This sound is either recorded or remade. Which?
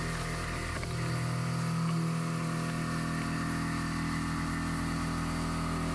recorded